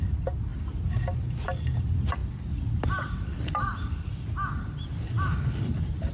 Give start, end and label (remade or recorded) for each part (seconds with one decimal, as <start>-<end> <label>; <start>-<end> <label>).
0.0-0.5 remade; 0.5-1.1 recorded; 1.1-4.9 remade; 4.9-5.6 recorded; 5.6-6.1 remade